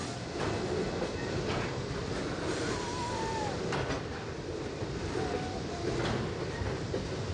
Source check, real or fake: real